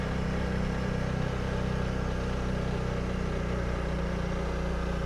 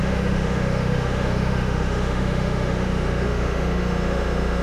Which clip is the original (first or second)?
first